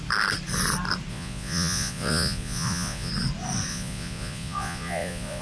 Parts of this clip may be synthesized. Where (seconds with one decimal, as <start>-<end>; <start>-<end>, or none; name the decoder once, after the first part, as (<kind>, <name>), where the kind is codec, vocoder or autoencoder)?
1.1-3.1 (vocoder, Vocos); 3.7-5.4

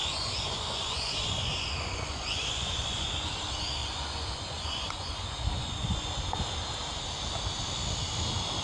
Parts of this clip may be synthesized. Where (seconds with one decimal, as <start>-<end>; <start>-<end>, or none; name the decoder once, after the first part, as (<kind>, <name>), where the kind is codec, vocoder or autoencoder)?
0.0-3.3 (vocoder, Vocos); 3.8-6.4